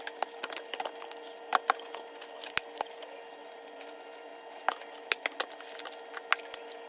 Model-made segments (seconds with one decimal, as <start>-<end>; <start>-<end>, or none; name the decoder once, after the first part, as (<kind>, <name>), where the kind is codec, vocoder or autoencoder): none